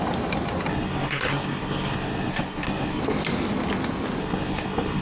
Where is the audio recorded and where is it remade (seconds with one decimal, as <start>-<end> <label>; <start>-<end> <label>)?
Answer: 0.0-0.7 recorded; 0.7-3.0 remade; 3.0-4.2 recorded; 4.2-5.0 remade